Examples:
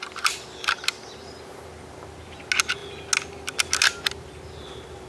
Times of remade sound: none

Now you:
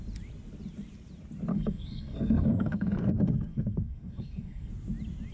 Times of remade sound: 1.5-4.7 (codec, SNAC)

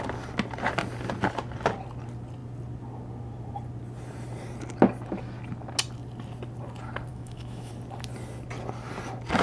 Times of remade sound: 7.1-7.7 (autoencoder, DAC-VAE)

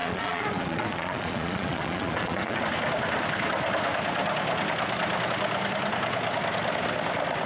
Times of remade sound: 0.0-2.6 (vocoder, Vocos)

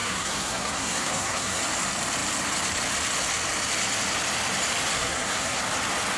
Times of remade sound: 0.0-1.6 (codec, SNAC); 4.9-5.6

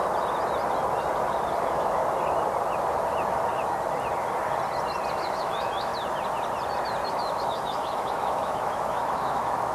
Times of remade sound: 1.6-2.0 (autoencoder, DAC-VAE); 5.1-5.9; 7.1-9.7